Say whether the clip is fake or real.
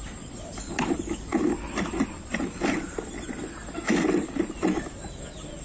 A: real